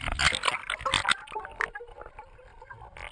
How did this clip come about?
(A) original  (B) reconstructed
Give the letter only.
A